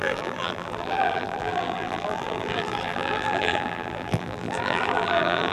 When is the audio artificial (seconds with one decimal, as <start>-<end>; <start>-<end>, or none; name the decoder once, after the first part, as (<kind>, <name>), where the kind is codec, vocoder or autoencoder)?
0.0-5.5 (vocoder, BigVGAN v2)